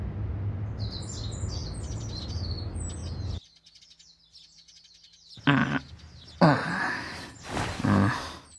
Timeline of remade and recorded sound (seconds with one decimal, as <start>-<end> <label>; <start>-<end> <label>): 0.0-8.6 recorded